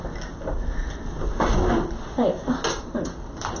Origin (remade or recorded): recorded